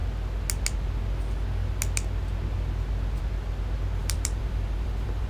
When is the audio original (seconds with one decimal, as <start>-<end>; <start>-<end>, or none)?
0.0-4.0